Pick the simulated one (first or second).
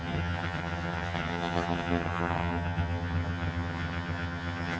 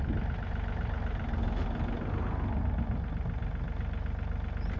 first